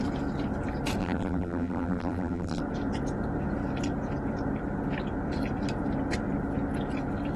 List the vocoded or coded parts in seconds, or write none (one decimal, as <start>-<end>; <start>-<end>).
1.0-2.6